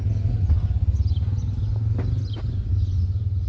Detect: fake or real real